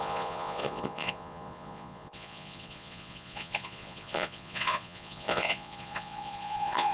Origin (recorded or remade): remade